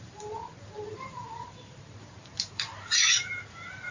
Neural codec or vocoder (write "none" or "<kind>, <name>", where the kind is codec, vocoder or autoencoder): vocoder, BigVGAN v2